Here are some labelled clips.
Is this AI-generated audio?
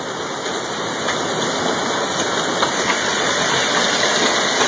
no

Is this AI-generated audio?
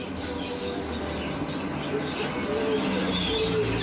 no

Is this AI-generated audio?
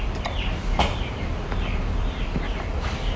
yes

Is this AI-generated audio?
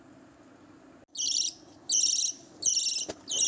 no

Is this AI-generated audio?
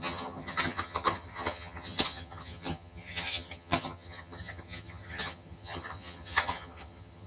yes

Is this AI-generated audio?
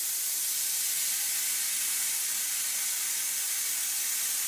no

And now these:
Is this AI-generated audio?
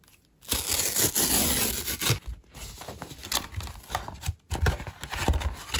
no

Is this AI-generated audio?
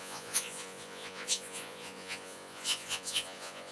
yes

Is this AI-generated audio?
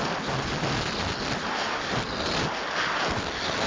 no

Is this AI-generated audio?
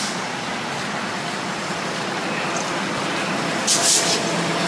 no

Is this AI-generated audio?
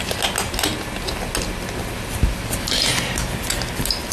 no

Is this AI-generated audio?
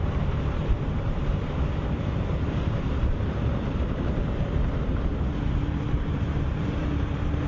yes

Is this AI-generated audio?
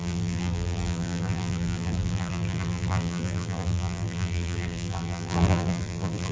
yes